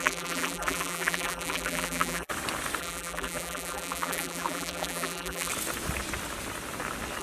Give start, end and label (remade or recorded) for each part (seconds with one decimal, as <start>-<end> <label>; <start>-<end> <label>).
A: 0.0-2.3 remade; 2.3-2.8 recorded; 2.8-5.5 remade; 5.5-7.2 recorded